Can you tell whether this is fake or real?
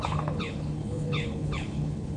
fake